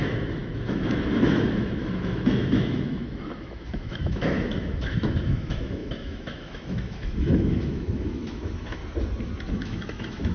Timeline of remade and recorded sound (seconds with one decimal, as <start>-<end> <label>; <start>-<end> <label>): 0.0-8.8 remade; 8.8-9.5 recorded; 9.5-10.3 remade